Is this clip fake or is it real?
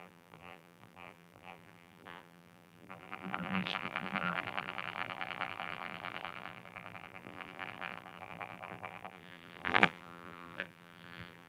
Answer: fake